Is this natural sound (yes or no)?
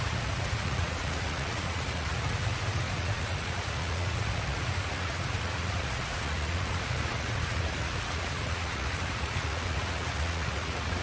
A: no